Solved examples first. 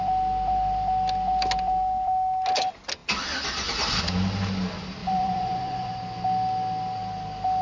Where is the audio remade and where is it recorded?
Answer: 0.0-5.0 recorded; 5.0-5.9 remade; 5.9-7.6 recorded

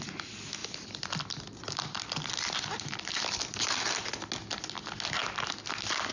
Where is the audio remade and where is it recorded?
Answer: 0.0-0.6 recorded; 0.6-4.3 remade; 4.3-6.1 recorded

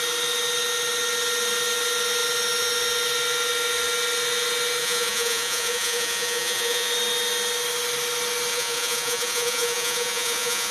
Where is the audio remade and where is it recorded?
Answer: 0.0-4.8 recorded; 4.8-6.9 remade; 6.9-8.5 recorded; 8.5-10.7 remade